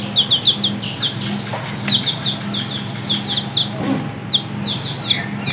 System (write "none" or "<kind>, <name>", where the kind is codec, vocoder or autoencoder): none